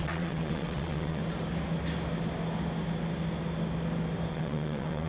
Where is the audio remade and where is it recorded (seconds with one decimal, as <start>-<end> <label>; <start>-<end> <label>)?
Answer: 0.0-1.2 remade; 1.2-4.3 recorded; 4.3-5.1 remade